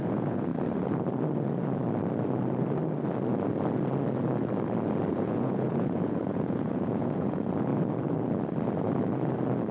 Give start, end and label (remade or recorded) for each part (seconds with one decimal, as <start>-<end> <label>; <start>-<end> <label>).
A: 0.0-0.5 remade; 0.5-5.1 recorded; 5.1-7.7 remade; 7.7-9.7 recorded

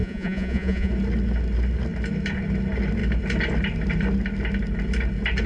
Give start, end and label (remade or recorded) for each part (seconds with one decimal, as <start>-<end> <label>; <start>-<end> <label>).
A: 0.0-0.9 remade; 0.9-5.5 recorded

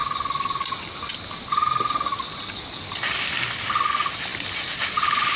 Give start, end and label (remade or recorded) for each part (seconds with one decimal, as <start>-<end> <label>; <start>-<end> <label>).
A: 0.0-5.4 recorded

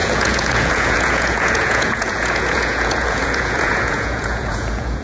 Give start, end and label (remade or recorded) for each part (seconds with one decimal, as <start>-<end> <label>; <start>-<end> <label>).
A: 0.0-5.0 remade

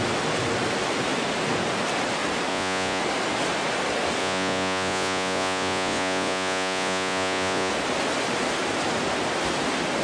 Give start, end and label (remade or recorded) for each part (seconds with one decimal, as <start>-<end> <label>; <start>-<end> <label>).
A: 0.0-2.5 recorded; 2.5-3.0 remade; 3.0-4.2 recorded; 4.2-7.7 remade; 7.7-10.0 recorded